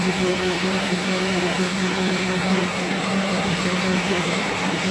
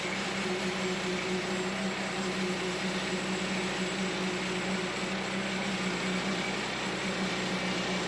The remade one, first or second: first